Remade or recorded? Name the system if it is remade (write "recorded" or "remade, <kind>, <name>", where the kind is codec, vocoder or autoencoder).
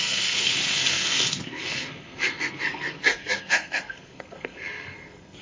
remade, codec, SNAC